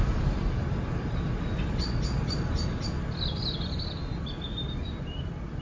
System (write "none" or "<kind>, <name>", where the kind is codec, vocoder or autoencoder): none